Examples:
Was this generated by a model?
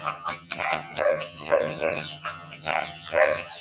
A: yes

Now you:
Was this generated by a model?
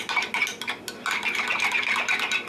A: no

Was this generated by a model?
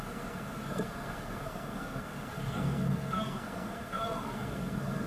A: yes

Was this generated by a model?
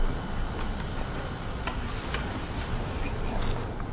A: no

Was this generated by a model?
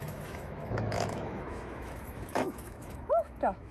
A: yes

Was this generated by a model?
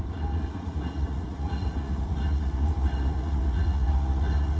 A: yes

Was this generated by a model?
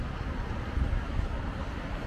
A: no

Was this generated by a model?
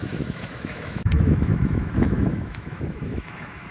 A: yes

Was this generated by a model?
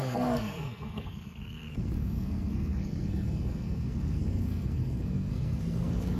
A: yes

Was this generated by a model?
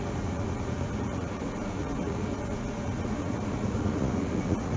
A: yes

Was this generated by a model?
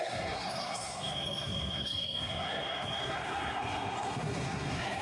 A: yes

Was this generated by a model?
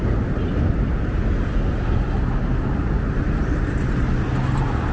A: no